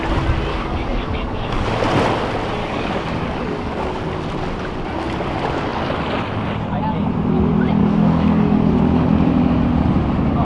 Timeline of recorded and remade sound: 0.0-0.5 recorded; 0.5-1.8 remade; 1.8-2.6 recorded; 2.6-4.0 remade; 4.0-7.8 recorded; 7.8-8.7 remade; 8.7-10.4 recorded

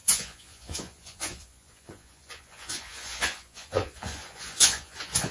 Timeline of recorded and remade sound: 0.0-5.3 remade

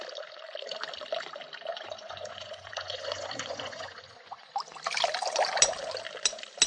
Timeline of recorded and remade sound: 0.0-1.7 recorded; 1.7-4.5 remade; 4.5-6.7 recorded